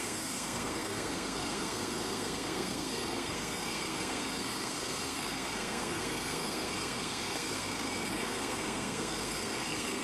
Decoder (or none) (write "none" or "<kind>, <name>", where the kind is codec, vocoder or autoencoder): codec, SNAC